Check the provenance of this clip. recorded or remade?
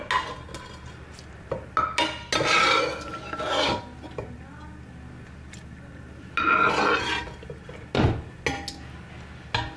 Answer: recorded